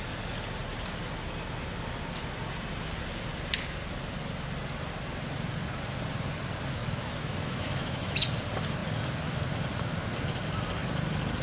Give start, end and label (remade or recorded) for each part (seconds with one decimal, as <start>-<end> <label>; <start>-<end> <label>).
0.0-6.8 recorded; 6.8-8.2 remade; 8.2-11.4 recorded